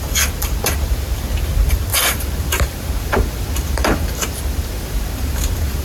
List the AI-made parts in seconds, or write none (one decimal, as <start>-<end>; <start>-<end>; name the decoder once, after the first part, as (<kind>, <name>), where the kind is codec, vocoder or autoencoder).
1.9-5.8 (vocoder, BigVGAN v2)